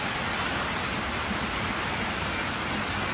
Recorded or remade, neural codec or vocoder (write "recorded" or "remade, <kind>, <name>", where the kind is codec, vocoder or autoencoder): recorded